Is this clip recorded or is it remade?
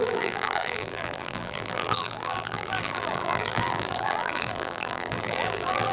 remade